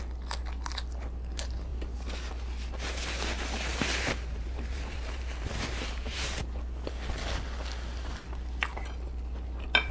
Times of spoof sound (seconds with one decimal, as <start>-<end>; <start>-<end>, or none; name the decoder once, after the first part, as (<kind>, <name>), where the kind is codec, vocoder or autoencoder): 3.7-6.4 (vocoder, BigVGAN v2)